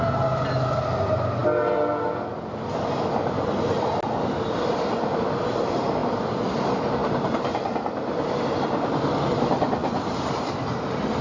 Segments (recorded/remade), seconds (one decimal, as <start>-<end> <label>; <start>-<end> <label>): 0.0-6.0 recorded; 6.0-6.6 remade; 6.6-11.2 recorded